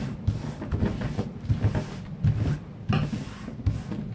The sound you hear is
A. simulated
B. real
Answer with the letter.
B